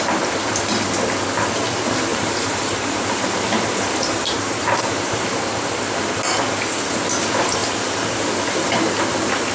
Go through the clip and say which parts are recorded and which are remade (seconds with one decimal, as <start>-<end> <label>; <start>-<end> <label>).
0.0-2.1 recorded; 2.1-5.1 remade; 5.1-9.5 recorded